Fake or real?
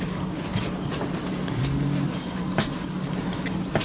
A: real